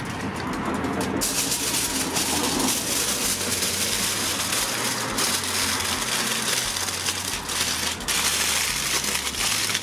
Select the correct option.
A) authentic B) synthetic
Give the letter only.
A